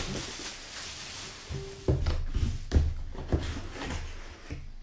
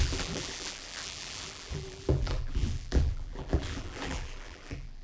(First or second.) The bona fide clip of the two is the first